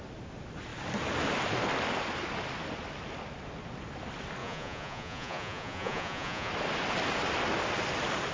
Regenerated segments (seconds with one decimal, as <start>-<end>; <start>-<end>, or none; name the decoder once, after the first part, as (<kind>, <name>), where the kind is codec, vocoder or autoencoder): 4.4-6.5 (vocoder, Vocos)